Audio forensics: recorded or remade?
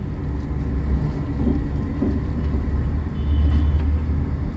recorded